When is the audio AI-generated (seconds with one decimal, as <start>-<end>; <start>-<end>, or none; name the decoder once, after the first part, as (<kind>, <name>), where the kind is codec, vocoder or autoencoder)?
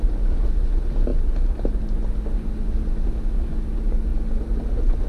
none